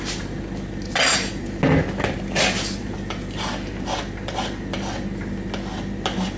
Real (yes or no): yes